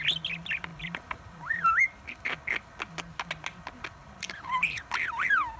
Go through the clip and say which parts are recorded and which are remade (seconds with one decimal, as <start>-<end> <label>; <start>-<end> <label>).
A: 0.0-0.7 recorded; 0.7-2.2 remade; 2.2-4.0 recorded; 4.0-4.8 remade; 4.8-5.6 recorded